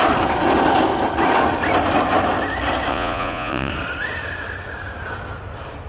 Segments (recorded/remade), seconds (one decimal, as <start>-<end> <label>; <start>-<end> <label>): 0.0-2.9 recorded; 2.9-3.7 remade; 3.7-5.9 recorded